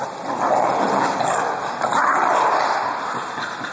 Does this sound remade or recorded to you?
recorded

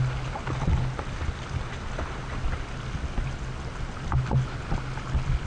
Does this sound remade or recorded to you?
recorded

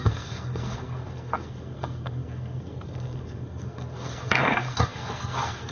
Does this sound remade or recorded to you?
remade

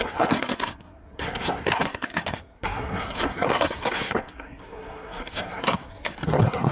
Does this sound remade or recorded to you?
remade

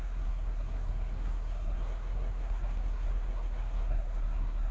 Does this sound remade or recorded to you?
remade